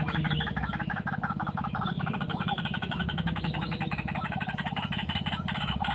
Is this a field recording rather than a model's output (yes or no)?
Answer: no